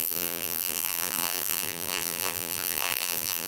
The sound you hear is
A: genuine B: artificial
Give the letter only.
B